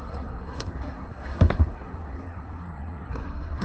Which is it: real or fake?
fake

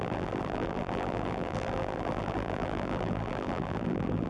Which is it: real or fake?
fake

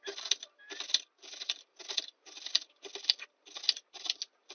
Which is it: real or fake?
real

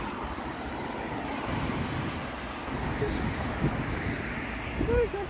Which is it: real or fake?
real